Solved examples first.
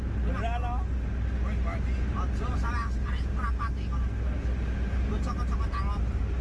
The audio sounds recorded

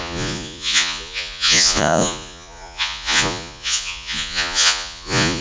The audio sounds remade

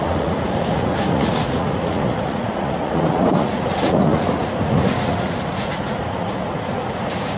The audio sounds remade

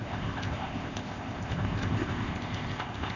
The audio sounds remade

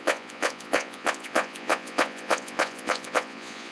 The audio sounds remade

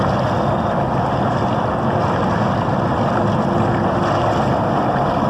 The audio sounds recorded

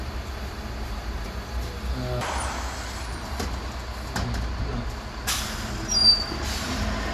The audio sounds recorded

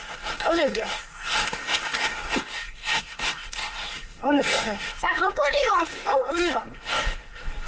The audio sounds remade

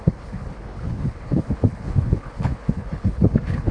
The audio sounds remade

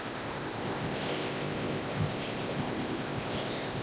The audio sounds remade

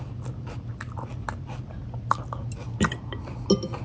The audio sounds recorded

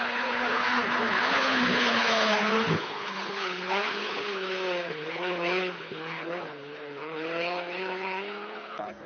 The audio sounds remade